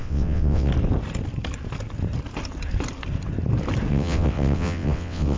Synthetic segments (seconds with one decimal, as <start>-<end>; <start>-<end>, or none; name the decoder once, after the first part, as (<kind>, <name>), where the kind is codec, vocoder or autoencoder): 0.0-0.7 (vocoder, WaveNeXt); 3.9-5.4